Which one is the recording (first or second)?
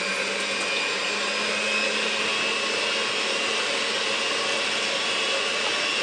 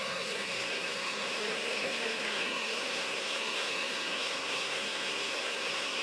first